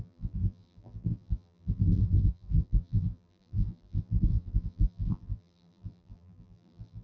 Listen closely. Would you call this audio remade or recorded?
remade